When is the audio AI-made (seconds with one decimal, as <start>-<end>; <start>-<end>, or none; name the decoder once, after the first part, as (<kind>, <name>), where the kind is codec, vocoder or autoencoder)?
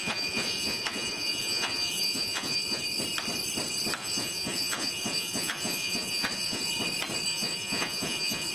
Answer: 0.0-2.8 (vocoder, Vocos); 4.0-6.7; 7.3-8.5